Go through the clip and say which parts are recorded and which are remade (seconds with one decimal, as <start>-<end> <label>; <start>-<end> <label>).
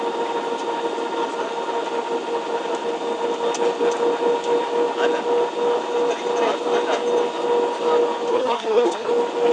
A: 0.0-8.3 recorded; 8.3-9.1 remade; 9.1-9.5 recorded